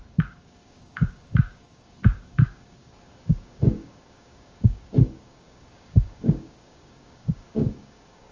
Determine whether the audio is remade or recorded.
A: remade